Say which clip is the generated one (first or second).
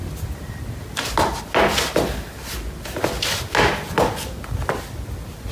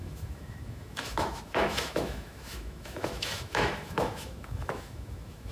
second